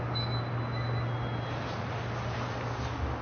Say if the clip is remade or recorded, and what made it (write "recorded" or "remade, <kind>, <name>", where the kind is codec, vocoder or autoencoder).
recorded